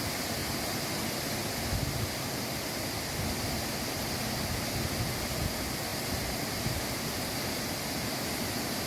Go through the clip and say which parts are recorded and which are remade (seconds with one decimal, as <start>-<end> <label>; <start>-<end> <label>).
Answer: 0.0-8.9 recorded